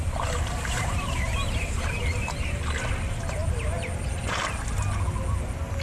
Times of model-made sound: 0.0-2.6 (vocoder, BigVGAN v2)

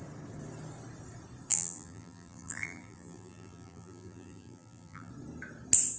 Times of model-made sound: 1.5-5.1 (vocoder, BigVGAN v2)